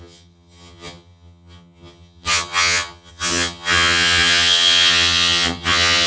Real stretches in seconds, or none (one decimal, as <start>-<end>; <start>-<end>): none